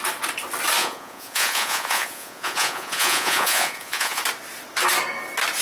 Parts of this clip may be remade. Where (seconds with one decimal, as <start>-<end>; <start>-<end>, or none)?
0.8-4.2